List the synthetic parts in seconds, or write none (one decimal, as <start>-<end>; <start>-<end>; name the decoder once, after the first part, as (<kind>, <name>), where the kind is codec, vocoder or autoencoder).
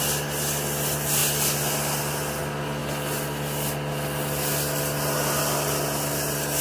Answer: none